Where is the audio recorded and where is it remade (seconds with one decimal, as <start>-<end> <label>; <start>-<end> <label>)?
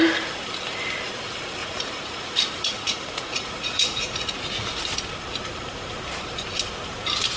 0.0-1.6 recorded; 1.6-4.4 remade; 4.4-7.4 recorded